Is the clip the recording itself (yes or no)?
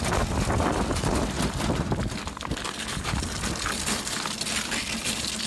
yes